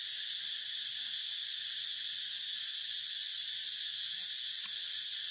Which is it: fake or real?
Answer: real